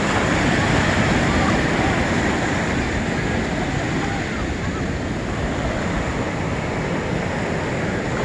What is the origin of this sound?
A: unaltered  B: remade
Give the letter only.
A